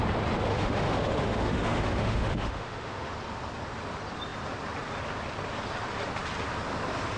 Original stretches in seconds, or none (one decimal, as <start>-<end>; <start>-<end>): 0.0-0.5; 3.1-7.2